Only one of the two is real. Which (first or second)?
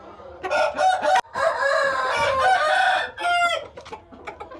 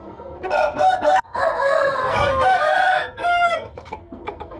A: first